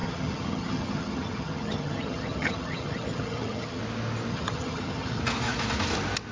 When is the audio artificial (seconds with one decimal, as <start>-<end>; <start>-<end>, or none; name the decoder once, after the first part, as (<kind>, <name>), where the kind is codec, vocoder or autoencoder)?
0.0-3.8 (vocoder, HiFi-GAN); 4.3-5.2